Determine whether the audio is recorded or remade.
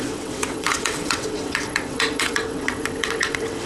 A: remade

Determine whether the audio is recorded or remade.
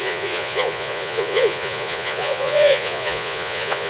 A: remade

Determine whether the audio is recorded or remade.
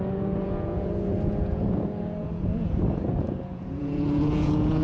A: remade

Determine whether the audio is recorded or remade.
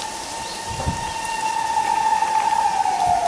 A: recorded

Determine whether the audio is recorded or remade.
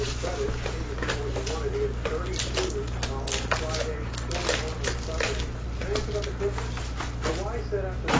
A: recorded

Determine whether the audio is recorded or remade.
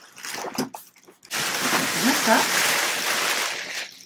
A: recorded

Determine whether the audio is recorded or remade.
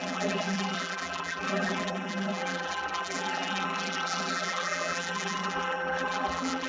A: remade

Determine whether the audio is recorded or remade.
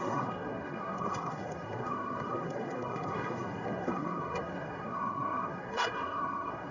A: remade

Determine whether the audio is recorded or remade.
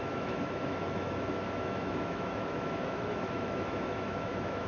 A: remade